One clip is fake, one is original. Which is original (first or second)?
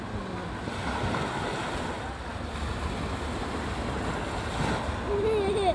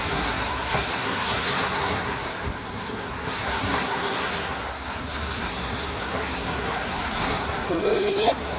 first